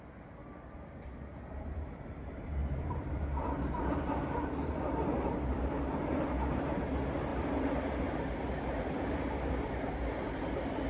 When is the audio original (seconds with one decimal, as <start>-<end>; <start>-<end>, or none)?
0.0-0.4; 5.6-7.3; 8.0-10.9